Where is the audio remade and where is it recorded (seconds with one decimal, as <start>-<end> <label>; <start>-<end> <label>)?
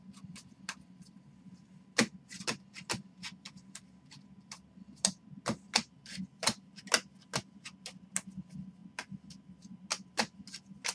0.0-10.9 recorded